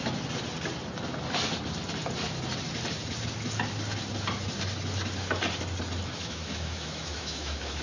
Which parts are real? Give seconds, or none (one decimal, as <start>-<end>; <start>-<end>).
0.0-6.2